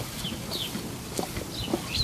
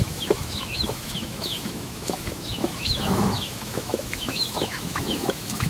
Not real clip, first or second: second